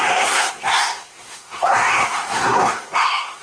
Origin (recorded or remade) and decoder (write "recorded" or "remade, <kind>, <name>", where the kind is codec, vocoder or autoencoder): remade, codec, SNAC